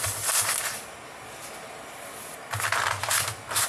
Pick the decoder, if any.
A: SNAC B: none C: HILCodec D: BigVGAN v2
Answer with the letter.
B